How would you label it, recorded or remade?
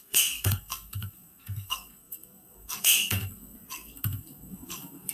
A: remade